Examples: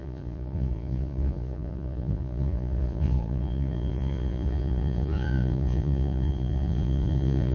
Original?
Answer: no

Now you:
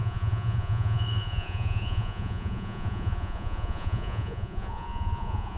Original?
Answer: no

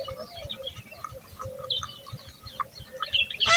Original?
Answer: yes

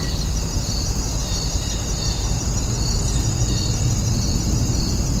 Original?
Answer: yes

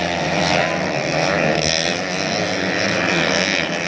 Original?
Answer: yes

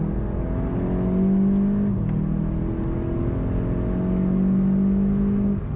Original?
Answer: yes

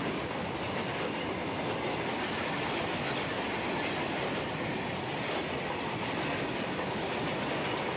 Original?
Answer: yes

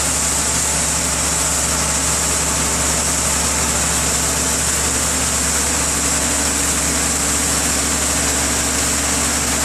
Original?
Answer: yes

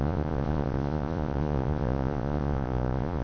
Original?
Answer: no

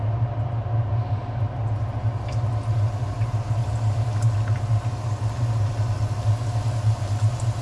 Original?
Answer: yes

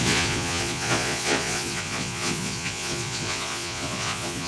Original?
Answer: no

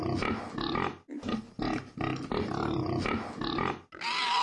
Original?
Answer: yes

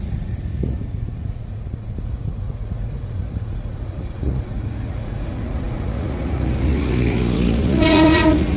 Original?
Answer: no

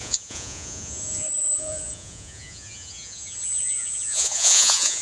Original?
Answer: no